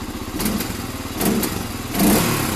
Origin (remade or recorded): recorded